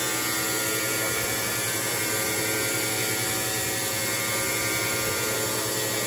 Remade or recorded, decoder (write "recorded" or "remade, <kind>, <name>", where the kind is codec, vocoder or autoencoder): recorded